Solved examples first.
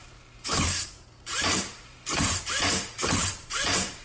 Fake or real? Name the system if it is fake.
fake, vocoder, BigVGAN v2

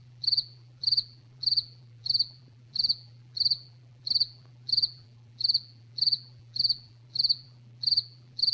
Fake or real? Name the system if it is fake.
fake, vocoder, BigVGAN v2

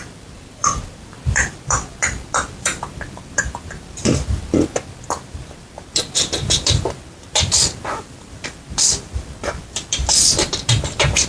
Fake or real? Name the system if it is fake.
fake, vocoder, BigVGAN v2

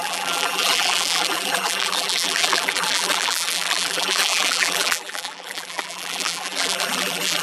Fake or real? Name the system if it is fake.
fake, vocoder, BigVGAN v2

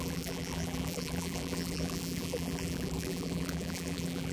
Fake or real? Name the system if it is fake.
fake, vocoder, BigVGAN v2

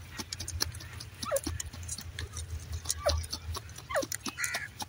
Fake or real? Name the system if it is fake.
real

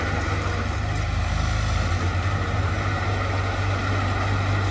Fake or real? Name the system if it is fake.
real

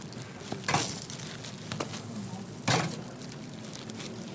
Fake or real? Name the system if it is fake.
real